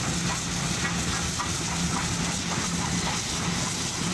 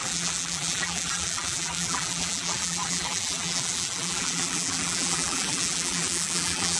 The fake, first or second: second